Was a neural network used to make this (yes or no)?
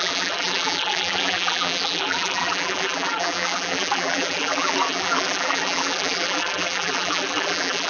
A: yes